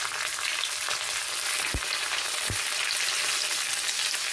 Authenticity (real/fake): real